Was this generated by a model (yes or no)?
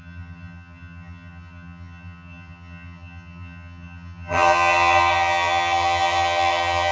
yes